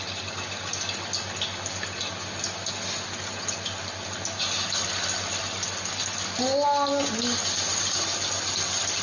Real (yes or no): yes